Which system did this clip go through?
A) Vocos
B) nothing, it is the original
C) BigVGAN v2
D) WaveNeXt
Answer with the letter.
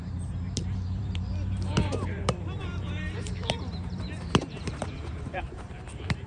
C